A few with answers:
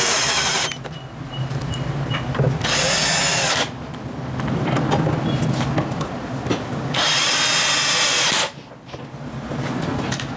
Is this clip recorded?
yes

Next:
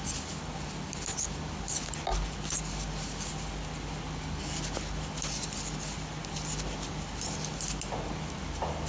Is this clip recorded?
yes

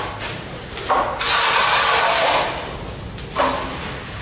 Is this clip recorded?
yes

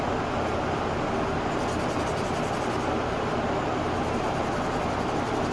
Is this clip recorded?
yes